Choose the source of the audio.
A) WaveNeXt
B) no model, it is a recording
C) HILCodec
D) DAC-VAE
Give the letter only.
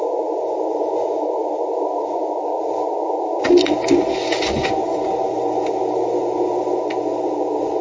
B